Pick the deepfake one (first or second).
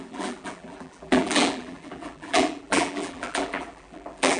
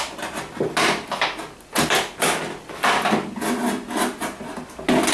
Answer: first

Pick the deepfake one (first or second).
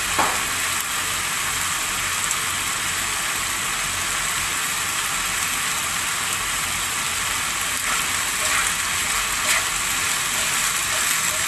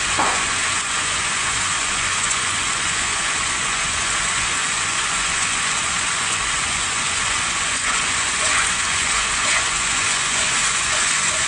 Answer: second